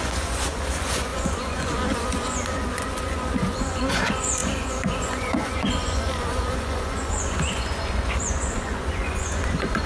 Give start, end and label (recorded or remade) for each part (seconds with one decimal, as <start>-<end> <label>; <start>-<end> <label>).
0.0-9.9 remade